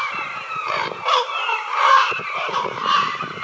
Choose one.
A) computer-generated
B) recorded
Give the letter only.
A